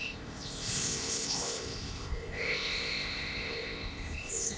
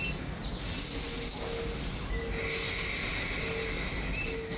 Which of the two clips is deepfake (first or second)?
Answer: first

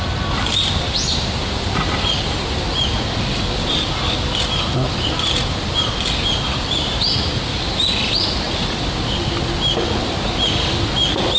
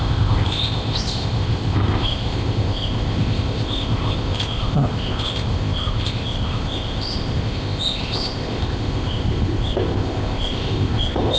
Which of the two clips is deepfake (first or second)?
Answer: second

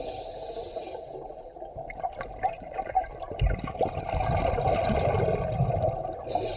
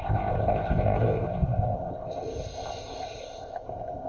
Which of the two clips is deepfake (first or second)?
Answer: second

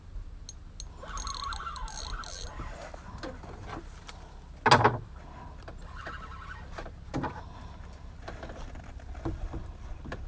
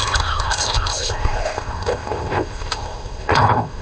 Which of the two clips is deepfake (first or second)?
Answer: second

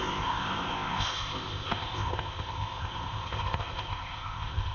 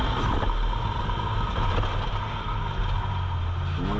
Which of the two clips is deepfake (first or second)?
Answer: first